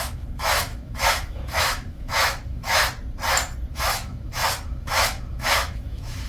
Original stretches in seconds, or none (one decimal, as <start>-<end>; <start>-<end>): 2.8-3.7